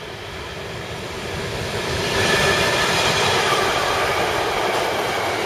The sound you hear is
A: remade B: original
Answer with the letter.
B